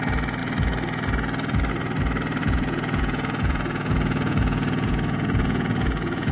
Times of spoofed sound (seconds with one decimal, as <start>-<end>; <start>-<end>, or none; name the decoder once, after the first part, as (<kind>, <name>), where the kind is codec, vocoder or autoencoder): 2.4-6.3 (vocoder, Vocos)